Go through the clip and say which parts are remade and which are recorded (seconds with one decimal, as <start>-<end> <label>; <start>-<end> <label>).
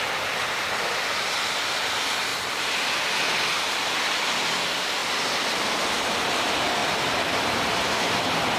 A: 0.0-6.8 recorded; 6.8-7.7 remade; 7.7-8.6 recorded